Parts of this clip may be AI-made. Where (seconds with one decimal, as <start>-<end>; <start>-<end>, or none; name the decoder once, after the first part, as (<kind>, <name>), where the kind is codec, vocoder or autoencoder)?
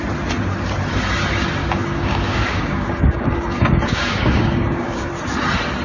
1.6-5.1 (codec, DAC)